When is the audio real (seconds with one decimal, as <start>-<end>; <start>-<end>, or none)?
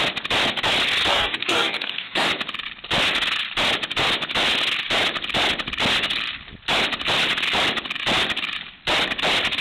0.0-1.1; 2.3-9.6